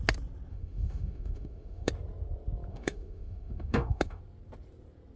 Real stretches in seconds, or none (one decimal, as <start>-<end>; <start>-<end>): 0.0-0.5; 1.9-2.7; 4.2-5.2